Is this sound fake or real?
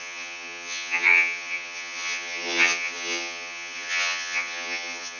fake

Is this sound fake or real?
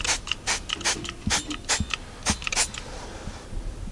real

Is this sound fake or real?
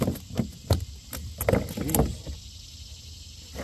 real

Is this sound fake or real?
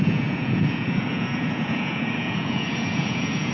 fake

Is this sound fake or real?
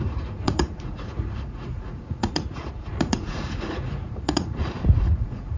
fake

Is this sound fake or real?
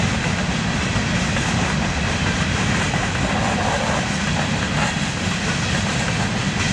real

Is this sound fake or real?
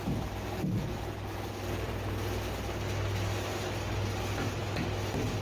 real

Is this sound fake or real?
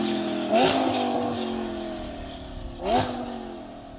real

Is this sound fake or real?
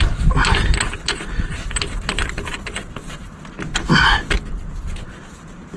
real